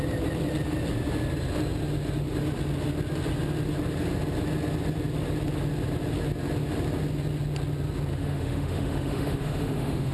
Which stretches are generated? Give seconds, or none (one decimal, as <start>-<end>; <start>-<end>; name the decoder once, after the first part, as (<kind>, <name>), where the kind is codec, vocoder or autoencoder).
8.1-10.1 (autoencoder, DAC-VAE)